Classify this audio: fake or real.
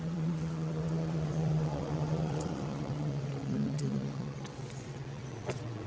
fake